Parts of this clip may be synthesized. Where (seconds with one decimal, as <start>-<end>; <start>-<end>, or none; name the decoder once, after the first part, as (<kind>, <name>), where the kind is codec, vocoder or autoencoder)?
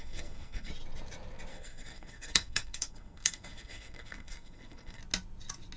0.0-0.7 (codec, SNAC); 1.5-5.0